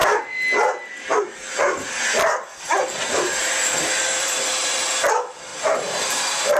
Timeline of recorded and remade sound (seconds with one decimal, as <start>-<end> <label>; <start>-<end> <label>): 0.0-3.4 recorded; 3.4-4.9 remade; 4.9-5.5 recorded; 5.5-6.6 remade